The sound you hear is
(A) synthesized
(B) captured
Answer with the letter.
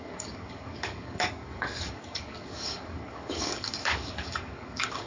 A